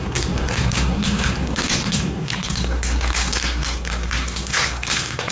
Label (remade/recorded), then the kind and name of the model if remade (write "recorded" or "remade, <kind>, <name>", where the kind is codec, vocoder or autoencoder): remade, codec, SNAC